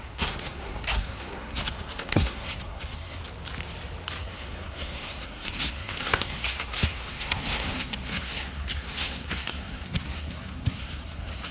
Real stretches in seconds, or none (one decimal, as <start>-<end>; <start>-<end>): 3.2-4.2